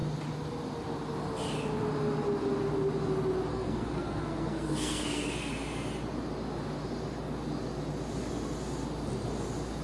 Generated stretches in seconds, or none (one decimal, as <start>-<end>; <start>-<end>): 3.5-5.5